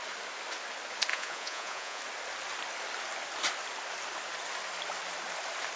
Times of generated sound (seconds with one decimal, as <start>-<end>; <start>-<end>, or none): 1.1-2.0